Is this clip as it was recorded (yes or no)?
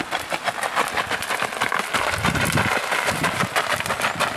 no